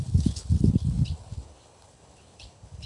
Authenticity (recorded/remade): remade